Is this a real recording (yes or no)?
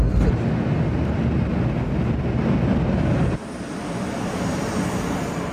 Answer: yes